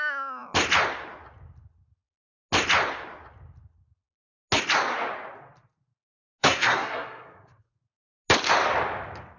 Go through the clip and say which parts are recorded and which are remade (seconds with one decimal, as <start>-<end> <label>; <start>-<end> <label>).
0.0-6.4 recorded; 6.4-7.8 remade; 7.8-9.4 recorded